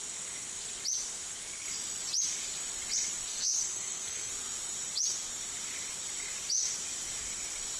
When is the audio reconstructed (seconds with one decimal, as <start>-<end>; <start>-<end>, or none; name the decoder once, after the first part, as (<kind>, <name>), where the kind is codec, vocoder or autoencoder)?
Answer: 3.3-4.3 (codec, SNAC)

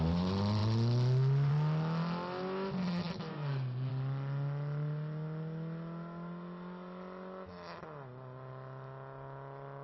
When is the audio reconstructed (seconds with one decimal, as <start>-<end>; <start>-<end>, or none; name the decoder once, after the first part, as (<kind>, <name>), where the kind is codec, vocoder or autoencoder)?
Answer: 3.3-3.9 (codec, SNAC)

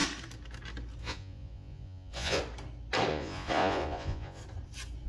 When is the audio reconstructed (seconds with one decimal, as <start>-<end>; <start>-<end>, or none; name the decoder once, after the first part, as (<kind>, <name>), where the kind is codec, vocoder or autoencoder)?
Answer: 1.0-2.4 (vocoder, Vocos); 3.1-4.4

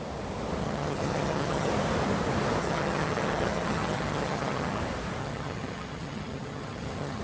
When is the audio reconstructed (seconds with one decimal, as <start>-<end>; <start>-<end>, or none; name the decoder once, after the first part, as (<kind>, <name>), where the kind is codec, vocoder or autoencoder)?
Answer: 0.6-1.7 (vocoder, HiFi-GAN); 2.6-4.8; 5.2-7.2

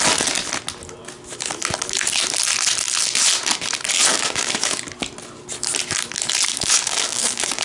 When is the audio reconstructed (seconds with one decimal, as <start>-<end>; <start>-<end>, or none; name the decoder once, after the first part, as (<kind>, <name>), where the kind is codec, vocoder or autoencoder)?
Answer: 4.1-4.8 (codec, DAC); 6.5-7.6